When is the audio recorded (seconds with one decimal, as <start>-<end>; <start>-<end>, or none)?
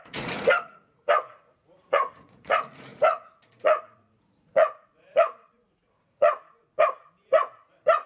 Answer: 6.4-7.2